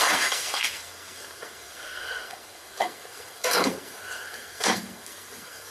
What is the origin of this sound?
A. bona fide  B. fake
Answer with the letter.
B